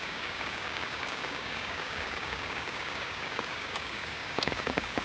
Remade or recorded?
remade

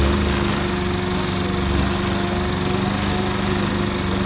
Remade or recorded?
recorded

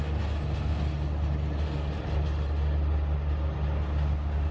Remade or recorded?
recorded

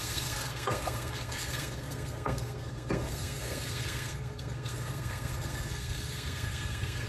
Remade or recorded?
remade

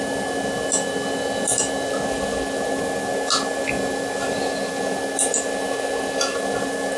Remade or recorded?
recorded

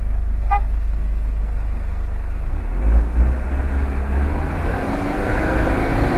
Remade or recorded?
remade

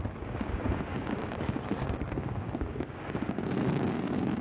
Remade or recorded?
remade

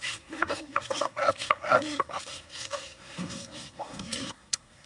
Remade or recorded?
remade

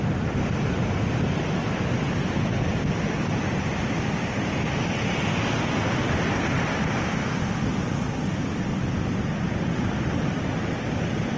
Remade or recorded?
recorded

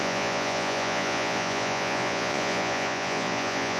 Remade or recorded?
remade